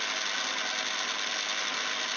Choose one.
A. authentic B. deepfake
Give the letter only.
A